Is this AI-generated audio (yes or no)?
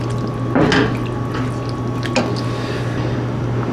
no